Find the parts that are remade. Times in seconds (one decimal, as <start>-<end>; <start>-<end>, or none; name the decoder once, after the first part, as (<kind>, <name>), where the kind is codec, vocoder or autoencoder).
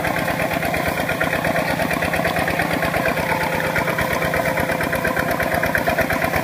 none